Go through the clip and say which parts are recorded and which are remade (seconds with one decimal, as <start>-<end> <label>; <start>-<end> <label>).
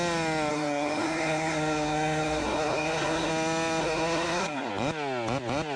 0.0-0.5 recorded; 0.5-3.3 remade; 3.3-3.8 recorded; 3.8-4.7 remade; 4.7-5.8 recorded